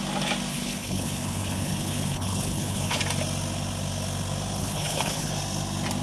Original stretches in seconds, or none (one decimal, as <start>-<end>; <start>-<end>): 0.0-0.5; 3.0-4.6; 5.3-6.0